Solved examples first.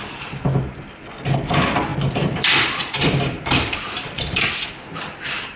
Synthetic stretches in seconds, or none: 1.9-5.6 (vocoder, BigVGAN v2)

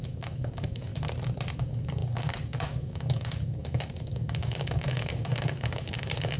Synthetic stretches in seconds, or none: 0.0-0.9 (codec, DAC); 1.5-6.4

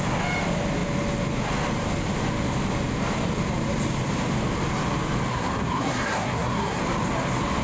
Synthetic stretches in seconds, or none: 5.3-6.8 (codec, SNAC)

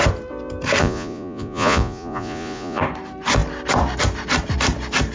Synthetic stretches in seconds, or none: 0.8-2.8 (vocoder, Vocos)

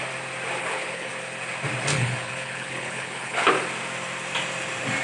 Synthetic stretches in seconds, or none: 0.6-1.1 (codec, HILCodec); 1.9-3.5

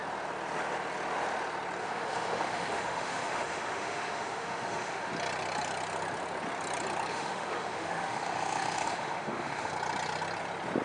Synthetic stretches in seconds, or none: 1.8-5.1 (autoencoder, DAC-VAE); 7.1-9.7